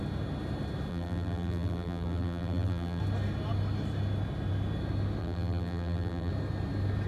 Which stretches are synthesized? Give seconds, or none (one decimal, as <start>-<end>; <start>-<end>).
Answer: 0.9-3.0; 5.2-6.3